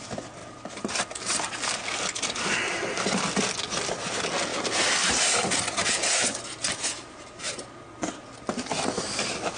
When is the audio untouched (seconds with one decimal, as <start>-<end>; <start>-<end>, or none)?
0.0-0.4; 1.9-4.5; 5.2-6.6; 7.6-9.6